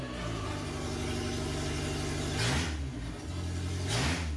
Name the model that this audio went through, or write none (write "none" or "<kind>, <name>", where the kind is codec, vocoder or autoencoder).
none